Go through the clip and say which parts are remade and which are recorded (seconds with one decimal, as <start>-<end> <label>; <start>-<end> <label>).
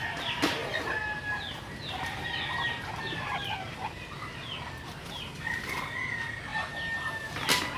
0.0-6.5 recorded; 6.5-7.1 remade; 7.1-7.8 recorded